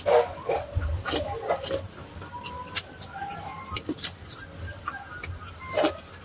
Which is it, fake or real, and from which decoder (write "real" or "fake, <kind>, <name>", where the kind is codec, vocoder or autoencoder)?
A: fake, vocoder, BigVGAN v2